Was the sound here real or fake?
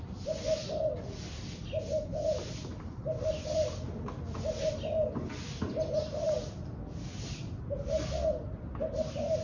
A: real